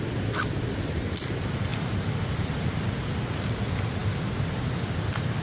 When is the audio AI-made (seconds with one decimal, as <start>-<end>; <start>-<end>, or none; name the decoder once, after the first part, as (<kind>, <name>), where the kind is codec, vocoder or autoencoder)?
none